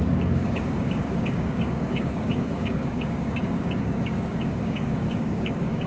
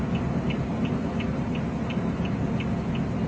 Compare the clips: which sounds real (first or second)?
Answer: second